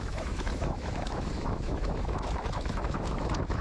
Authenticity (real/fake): fake